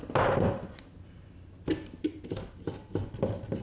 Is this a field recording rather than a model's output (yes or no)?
yes